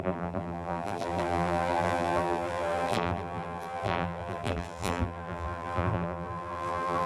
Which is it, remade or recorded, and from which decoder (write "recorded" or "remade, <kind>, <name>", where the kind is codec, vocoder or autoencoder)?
remade, vocoder, BigVGAN v2